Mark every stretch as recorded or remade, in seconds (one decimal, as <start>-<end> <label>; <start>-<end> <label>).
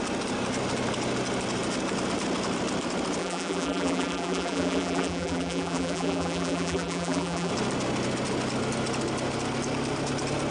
0.0-3.2 recorded; 3.2-7.5 remade; 7.5-10.5 recorded